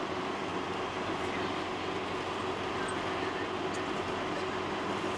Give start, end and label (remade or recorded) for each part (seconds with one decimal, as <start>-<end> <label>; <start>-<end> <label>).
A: 0.0-5.2 recorded

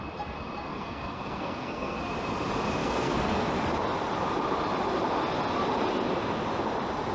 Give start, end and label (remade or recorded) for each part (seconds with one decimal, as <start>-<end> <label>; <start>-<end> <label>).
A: 0.0-0.7 recorded; 0.7-2.1 remade; 2.1-2.8 recorded; 2.8-3.5 remade; 3.5-7.1 recorded

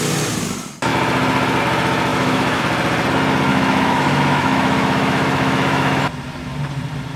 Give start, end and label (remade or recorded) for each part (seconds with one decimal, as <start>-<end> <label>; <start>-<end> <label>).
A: 0.0-2.1 recorded; 2.1-2.6 remade; 2.6-3.5 recorded; 3.5-6.0 remade; 6.0-7.2 recorded

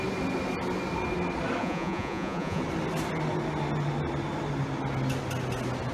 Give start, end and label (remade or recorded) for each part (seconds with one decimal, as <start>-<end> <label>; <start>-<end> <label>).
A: 0.0-1.6 recorded; 1.6-2.6 remade; 2.6-5.9 recorded

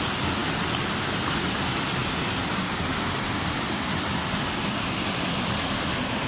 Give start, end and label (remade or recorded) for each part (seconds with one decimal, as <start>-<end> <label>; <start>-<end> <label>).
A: 0.0-2.0 recorded; 2.0-2.6 remade; 2.6-6.3 recorded

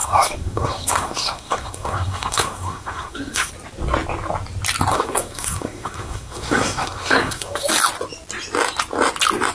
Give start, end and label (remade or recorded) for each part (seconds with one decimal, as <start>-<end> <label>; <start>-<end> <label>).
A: 0.0-3.5 remade; 3.5-4.9 recorded; 4.9-7.7 remade; 7.7-9.5 recorded

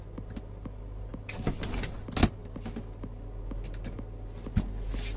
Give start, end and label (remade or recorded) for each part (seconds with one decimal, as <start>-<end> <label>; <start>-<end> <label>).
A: 0.0-5.2 recorded